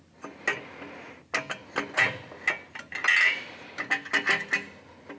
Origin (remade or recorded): recorded